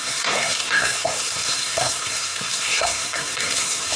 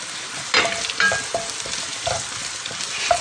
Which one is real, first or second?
second